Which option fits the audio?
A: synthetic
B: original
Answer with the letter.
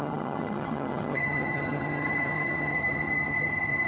A